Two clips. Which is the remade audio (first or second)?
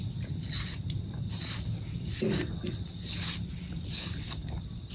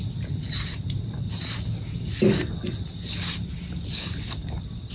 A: first